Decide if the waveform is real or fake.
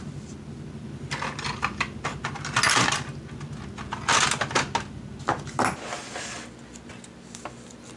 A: real